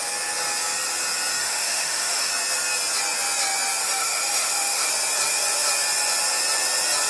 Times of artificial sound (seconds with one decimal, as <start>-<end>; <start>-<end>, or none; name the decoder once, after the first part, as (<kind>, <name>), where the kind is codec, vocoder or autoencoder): 1.4-2.3 (autoencoder, DAC-VAE); 3.8-4.9

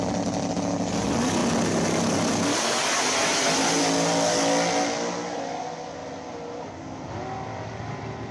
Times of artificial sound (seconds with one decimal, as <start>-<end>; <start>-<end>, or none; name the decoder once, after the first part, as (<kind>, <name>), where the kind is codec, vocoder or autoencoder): none

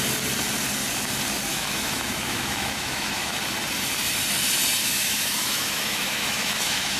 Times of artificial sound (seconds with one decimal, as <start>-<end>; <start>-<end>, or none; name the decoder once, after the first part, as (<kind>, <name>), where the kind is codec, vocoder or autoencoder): 1.5-3.4 (autoencoder, DAC-VAE); 4.8-7.0

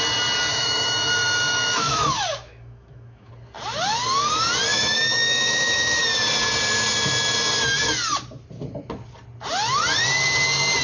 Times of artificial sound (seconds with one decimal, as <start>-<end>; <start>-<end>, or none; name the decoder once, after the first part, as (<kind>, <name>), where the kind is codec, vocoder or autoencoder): 0.5-3.3 (autoencoder, DAC-VAE); 4.7-6.0

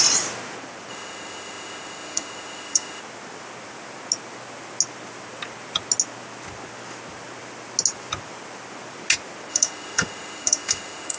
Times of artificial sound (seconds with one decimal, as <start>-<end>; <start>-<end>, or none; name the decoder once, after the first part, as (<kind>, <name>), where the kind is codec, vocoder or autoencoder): 0.9-3.0 (autoencoder, DAC-VAE); 9.5-11.2

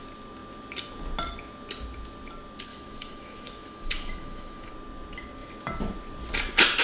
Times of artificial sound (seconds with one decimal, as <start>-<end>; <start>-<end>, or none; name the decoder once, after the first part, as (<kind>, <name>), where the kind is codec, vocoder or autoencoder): 2.7-4.7 (autoencoder, DAC-VAE)

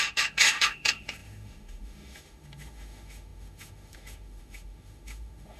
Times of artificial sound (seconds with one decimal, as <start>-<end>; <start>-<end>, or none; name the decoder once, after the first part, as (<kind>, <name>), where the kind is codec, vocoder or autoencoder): 0.0-5.6 (autoencoder, DAC-VAE)